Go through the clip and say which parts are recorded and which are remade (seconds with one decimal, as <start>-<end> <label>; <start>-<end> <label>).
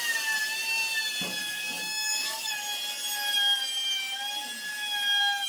0.0-1.4 recorded; 1.4-2.5 remade; 2.5-5.5 recorded